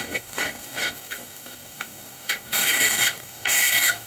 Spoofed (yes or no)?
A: yes